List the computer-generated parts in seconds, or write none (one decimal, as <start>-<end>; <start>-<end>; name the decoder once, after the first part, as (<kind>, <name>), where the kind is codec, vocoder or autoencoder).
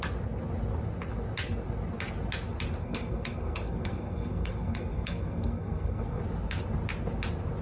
2.8-6.2 (codec, SNAC)